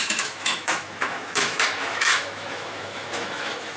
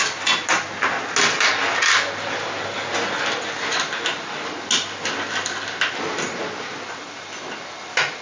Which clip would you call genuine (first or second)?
second